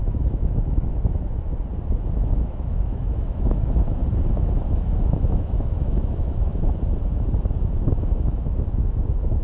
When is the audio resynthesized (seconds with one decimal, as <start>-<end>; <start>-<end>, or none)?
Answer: 0.0-0.9; 2.1-4.0; 4.6-6.5; 7.6-9.4